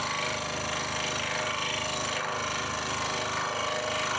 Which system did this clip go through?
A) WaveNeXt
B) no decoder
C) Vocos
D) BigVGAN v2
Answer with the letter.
B